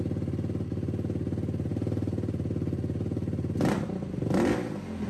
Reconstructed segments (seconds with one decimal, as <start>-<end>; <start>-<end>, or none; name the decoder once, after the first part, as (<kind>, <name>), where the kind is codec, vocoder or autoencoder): none